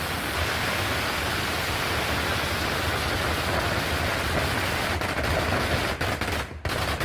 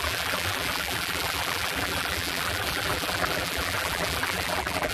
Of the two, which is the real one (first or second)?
first